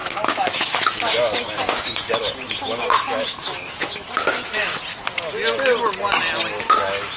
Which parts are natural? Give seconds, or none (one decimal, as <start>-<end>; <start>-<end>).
4.7-6.6

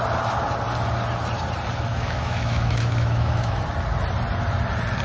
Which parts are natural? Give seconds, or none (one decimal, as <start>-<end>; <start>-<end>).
0.0-1.9; 3.6-5.0

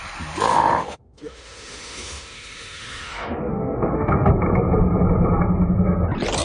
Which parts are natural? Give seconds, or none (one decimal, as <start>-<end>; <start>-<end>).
0.0-0.5; 4.3-6.4